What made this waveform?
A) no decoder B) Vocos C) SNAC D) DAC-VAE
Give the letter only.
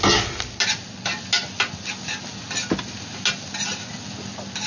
A